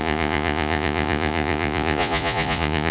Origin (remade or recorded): remade